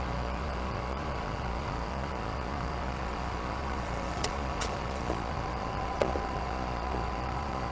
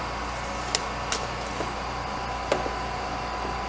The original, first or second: second